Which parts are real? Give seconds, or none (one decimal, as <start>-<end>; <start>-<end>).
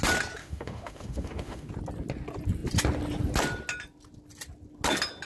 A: 0.0-0.4; 1.7-5.2